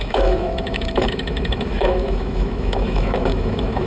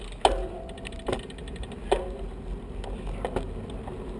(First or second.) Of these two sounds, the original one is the second